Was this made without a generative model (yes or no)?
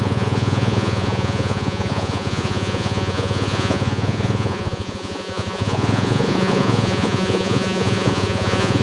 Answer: no